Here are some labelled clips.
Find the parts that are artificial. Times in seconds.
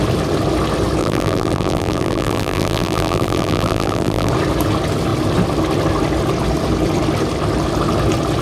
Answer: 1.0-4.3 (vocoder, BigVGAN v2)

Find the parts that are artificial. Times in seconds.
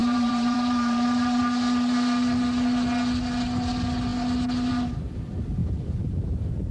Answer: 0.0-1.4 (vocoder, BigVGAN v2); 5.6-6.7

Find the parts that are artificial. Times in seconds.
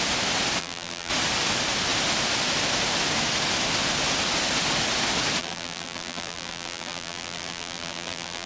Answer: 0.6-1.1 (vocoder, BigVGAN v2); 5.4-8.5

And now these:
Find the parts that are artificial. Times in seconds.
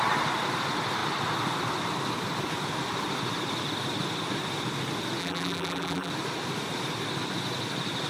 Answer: 5.2-6.1 (vocoder, BigVGAN v2)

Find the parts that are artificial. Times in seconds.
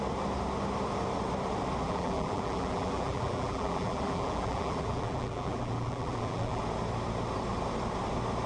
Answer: 1.8-6.6 (vocoder, BigVGAN v2)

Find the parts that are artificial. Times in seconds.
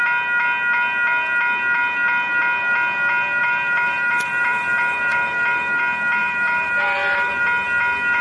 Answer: 3.4-5.8 (vocoder, BigVGAN v2); 6.2-7.4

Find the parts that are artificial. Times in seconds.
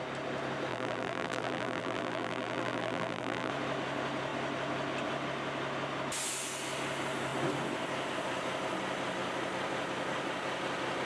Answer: 0.7-3.5 (vocoder, BigVGAN v2)